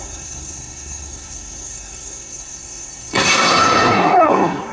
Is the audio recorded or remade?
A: remade